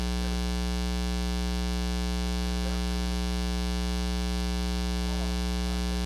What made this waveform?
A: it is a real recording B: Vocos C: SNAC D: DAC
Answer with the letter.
A